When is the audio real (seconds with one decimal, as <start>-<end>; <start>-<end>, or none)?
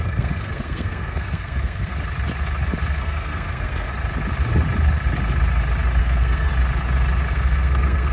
1.9-3.0; 3.9-6.0; 6.5-7.3